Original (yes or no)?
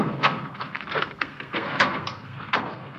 no